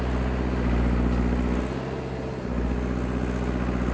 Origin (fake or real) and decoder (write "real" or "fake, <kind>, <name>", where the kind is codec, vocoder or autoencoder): real